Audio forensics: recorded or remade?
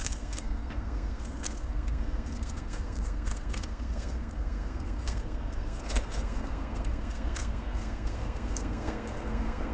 remade